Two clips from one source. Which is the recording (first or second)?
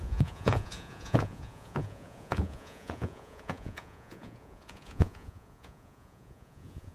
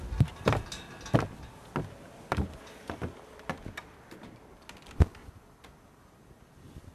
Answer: second